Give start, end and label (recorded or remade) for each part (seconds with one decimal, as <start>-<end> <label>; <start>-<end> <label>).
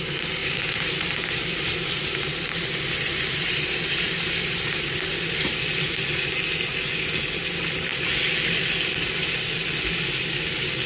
0.0-0.4 recorded; 0.4-4.7 remade; 4.7-10.9 recorded